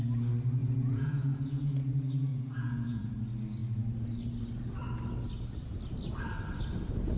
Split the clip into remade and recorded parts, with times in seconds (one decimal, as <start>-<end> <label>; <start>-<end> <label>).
0.0-0.6 recorded; 0.6-1.9 remade; 1.9-2.3 recorded; 2.3-3.2 remade; 3.2-7.2 recorded